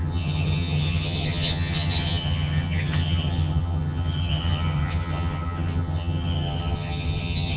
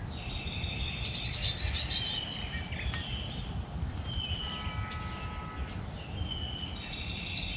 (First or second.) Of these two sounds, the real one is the second